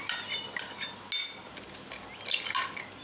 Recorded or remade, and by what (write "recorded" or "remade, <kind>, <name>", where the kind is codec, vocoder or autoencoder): recorded